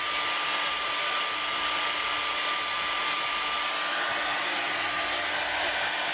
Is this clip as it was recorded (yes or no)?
yes